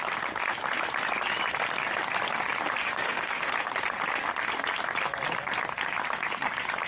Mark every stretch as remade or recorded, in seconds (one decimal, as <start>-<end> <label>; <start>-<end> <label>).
0.0-2.8 recorded; 2.8-3.5 remade; 3.5-6.9 recorded